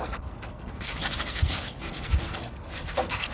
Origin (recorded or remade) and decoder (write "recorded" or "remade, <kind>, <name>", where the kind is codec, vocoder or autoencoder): remade, codec, SNAC